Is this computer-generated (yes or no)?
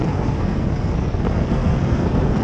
yes